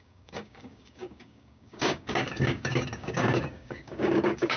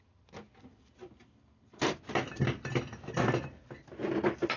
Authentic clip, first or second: second